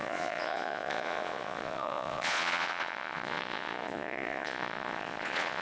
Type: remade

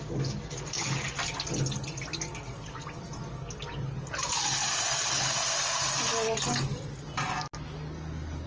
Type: recorded